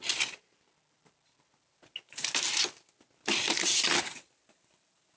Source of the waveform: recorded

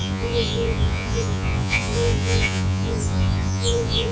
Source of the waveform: remade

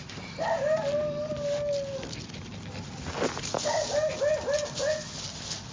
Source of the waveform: recorded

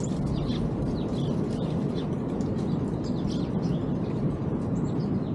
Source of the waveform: recorded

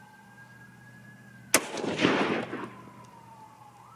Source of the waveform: recorded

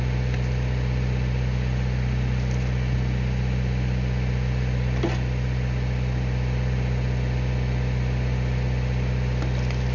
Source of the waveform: recorded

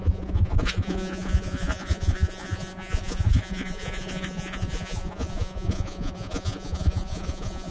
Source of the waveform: remade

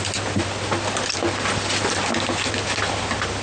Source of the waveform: recorded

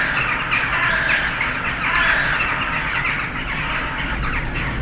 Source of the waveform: recorded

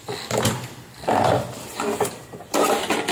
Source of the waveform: recorded